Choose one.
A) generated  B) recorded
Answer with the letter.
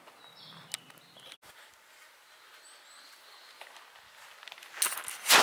B